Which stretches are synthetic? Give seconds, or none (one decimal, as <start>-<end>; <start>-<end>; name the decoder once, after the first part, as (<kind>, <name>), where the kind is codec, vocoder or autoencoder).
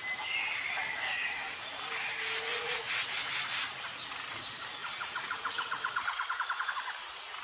2.5-3.0 (vocoder, Vocos); 4.8-6.7